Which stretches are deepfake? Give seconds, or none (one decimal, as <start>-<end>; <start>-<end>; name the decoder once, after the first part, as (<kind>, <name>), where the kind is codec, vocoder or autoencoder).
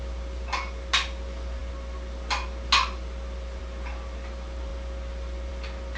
none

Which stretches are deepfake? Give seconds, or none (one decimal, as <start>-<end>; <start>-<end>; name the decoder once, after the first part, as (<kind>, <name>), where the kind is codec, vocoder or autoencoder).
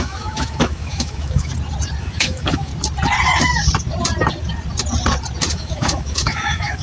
0.0-1.5 (autoencoder, DAC-VAE); 2.0-2.7; 5.5-6.8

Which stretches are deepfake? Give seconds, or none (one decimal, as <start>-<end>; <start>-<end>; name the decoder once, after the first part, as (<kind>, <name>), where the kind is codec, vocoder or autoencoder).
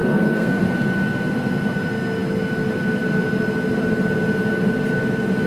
0.0-0.6 (codec, SNAC)